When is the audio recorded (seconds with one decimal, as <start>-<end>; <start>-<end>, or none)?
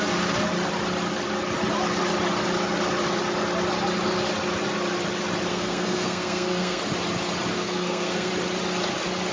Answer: 0.0-5.5; 6.8-7.5; 8.3-9.3